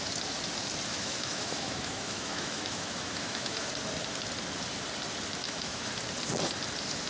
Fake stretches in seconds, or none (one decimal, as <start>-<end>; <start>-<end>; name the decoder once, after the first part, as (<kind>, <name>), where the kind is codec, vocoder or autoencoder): 0.9-3.7 (autoencoder, DAC-VAE); 5.4-6.0